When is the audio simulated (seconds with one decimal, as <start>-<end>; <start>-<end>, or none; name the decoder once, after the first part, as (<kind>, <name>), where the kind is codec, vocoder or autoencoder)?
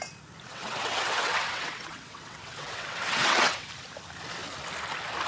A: 0.5-3.7 (vocoder, WaveNeXt)